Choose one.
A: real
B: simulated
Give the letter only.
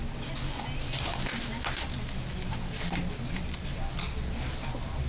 A